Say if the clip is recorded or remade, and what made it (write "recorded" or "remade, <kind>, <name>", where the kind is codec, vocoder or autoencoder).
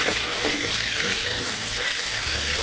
remade, codec, DAC